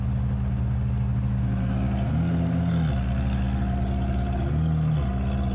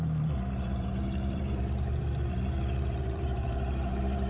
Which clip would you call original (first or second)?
first